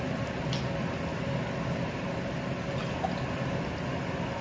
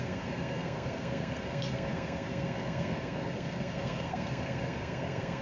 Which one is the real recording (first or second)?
first